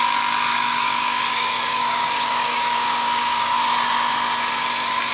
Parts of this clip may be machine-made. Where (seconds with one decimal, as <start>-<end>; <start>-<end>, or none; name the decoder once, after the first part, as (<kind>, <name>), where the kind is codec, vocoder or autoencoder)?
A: 0.5-3.6 (codec, DAC)